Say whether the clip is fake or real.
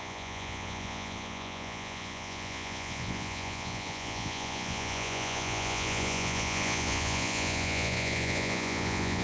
fake